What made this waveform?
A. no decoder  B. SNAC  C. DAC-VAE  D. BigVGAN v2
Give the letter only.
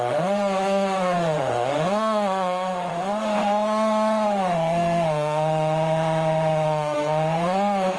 C